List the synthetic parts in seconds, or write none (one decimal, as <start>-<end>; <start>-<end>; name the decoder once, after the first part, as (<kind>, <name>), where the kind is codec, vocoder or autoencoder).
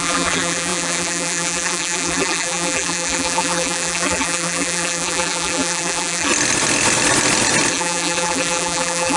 0.0-6.3 (vocoder, BigVGAN v2); 7.7-9.2